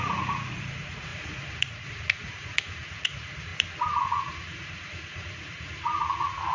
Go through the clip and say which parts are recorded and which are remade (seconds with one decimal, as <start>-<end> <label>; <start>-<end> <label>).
0.0-3.5 remade; 3.5-4.0 recorded; 4.0-6.5 remade